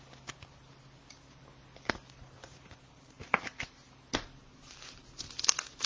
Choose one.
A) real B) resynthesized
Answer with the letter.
A